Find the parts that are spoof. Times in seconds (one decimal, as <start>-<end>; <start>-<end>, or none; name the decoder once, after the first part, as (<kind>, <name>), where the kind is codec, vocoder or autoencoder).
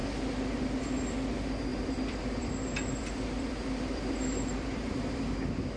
0.0-0.8 (vocoder, BigVGAN v2); 1.7-5.2